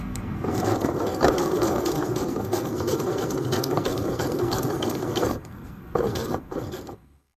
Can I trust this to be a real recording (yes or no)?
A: no